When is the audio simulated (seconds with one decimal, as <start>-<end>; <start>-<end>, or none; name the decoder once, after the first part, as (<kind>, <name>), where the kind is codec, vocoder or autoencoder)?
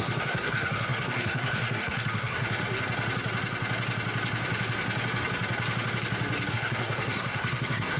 0.0-2.6 (codec, SNAC); 6.5-8.0